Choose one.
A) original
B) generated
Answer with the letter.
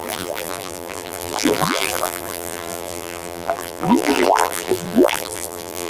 B